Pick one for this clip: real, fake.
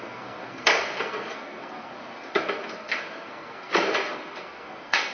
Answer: fake